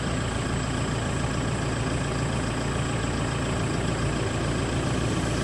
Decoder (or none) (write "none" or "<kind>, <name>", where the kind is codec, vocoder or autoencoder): none